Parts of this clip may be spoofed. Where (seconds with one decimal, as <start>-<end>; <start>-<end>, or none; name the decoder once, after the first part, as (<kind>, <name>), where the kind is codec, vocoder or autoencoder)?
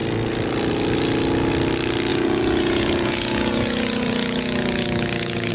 2.1-5.5 (vocoder, Vocos)